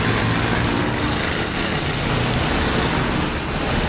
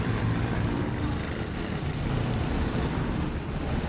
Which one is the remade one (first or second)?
second